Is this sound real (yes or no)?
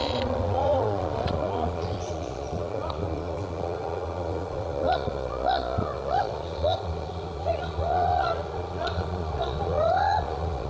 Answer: no